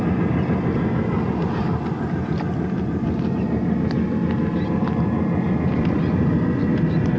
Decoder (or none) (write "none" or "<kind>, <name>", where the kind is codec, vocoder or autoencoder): none